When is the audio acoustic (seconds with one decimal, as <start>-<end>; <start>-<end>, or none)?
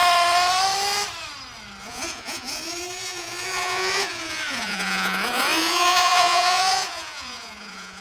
0.0-1.8